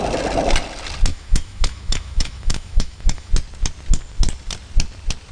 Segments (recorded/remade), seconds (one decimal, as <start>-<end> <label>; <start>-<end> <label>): 0.0-1.1 recorded; 1.1-3.3 remade; 3.3-5.3 recorded